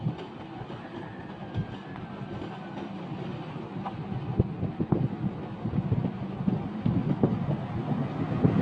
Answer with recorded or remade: recorded